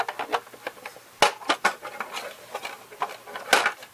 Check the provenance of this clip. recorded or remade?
recorded